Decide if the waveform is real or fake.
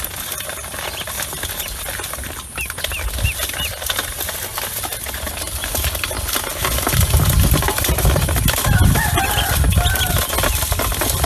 real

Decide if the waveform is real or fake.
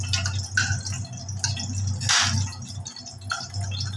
real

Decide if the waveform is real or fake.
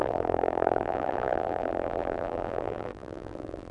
fake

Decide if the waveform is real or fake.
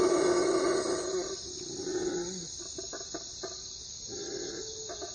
real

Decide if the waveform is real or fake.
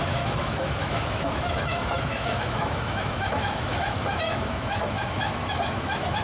fake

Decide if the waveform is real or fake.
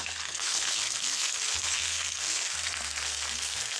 fake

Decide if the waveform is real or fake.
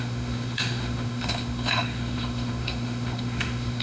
fake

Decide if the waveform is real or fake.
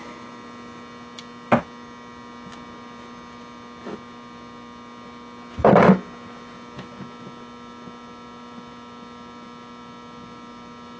real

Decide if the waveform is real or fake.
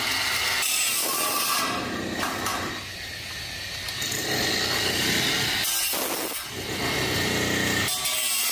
real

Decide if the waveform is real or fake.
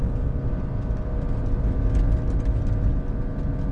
real